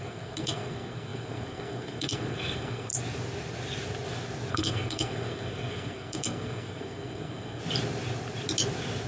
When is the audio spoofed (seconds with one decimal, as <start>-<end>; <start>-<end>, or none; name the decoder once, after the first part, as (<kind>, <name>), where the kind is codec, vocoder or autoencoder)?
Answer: 0.0-2.9 (codec, SNAC); 4.5-7.6